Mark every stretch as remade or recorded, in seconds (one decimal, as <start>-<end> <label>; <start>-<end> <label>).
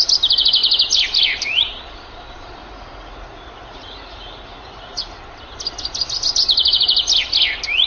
0.0-2.6 recorded; 2.6-5.2 remade; 5.2-7.9 recorded